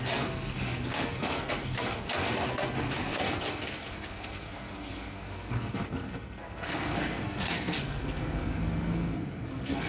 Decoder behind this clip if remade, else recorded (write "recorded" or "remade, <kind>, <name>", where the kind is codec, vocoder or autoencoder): remade, codec, SNAC